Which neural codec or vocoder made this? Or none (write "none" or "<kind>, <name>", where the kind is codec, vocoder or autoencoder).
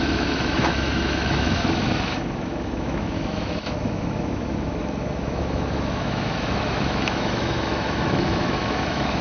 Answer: autoencoder, DAC-VAE